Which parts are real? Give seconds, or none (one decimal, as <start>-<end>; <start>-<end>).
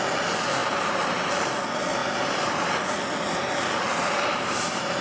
0.0-0.6; 1.3-2.0; 2.7-3.9